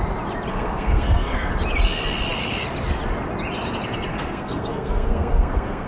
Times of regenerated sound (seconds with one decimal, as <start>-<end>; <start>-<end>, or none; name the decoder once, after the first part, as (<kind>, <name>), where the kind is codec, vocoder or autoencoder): 0.5-1.5 (codec, SNAC); 4.1-5.9